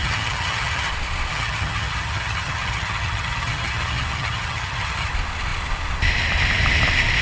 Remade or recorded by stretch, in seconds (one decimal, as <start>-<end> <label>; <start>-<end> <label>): 0.0-0.9 remade; 0.9-1.3 recorded; 1.3-5.1 remade; 5.1-7.2 recorded